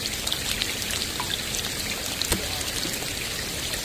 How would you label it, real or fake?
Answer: real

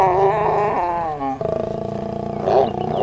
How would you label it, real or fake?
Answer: real